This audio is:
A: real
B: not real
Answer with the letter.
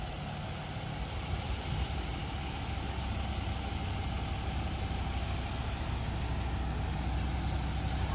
A